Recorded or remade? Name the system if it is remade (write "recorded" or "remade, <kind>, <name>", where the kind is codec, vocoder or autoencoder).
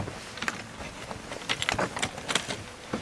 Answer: recorded